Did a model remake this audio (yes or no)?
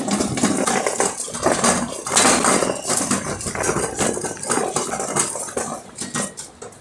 no